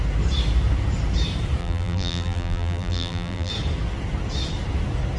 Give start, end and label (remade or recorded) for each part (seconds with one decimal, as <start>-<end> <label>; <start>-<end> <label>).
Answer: 0.0-1.6 recorded; 1.6-3.5 remade; 3.5-5.2 recorded